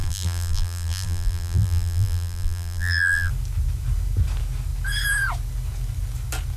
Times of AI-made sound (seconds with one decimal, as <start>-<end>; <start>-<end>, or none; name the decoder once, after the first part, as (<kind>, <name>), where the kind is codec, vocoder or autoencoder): 0.0-3.3 (vocoder, BigVGAN v2)